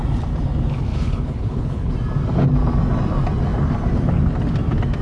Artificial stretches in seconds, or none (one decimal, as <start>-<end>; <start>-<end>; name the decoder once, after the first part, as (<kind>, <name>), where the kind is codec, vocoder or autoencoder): 0.9-1.9 (codec, HILCodec)

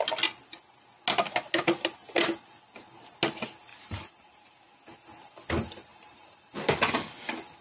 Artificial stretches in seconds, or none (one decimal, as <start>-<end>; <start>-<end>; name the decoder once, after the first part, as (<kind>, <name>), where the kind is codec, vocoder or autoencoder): 3.7-4.6 (vocoder, BigVGAN v2); 5.9-6.8

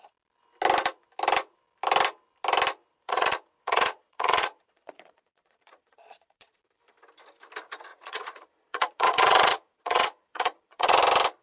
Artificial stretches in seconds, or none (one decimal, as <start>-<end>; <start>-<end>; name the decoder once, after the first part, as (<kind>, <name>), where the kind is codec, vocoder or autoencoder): 2.9-6.6 (vocoder, Vocos); 7.9-11.0

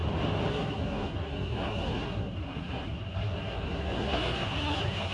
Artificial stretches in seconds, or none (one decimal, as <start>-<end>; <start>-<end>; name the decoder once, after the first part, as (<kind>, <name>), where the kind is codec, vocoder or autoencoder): 0.5-5.1 (codec, SNAC)

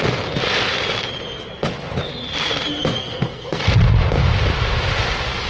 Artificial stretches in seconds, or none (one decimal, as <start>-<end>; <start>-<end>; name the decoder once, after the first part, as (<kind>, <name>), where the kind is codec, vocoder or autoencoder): 3.0-3.6 (codec, SNAC)